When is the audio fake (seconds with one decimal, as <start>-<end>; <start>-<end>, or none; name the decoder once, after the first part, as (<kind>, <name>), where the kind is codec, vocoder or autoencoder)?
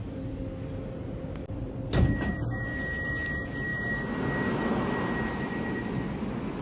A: none